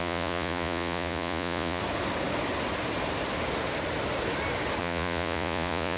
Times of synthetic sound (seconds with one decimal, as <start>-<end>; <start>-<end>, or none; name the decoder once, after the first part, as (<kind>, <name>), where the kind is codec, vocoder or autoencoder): 0.0-1.8 (vocoder, Vocos); 4.8-6.0